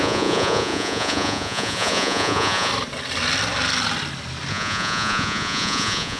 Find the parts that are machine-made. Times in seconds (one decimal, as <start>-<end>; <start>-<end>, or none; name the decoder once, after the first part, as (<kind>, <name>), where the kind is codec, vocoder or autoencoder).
0.0-2.7 (vocoder, Vocos); 4.5-6.2

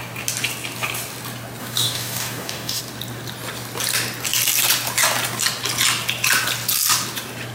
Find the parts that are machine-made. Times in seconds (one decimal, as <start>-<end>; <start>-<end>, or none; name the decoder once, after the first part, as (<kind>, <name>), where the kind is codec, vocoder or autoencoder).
1.6-2.8 (codec, DAC)

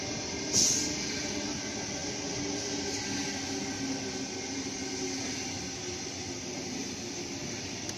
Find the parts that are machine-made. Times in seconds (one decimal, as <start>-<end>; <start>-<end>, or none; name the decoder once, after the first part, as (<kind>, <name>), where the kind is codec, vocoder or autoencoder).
none

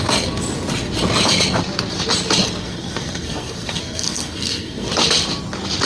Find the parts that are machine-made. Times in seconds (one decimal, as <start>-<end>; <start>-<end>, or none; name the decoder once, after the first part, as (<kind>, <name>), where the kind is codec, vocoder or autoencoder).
2.6-4.9 (codec, SNAC)

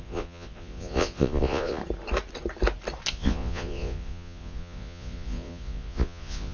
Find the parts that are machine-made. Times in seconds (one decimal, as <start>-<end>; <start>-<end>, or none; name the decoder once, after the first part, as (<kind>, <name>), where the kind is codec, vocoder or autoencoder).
0.0-1.8 (vocoder, Vocos); 3.1-6.5

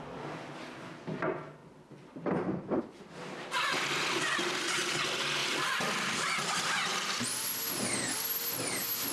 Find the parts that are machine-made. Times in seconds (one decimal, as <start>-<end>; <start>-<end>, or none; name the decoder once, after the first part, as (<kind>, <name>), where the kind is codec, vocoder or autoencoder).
5.4-5.9 (vocoder, BigVGAN v2); 6.9-7.6

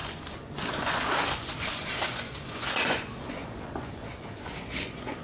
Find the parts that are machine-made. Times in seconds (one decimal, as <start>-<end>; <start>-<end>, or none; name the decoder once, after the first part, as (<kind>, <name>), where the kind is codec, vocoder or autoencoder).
0.0-5.2 (vocoder, Vocos)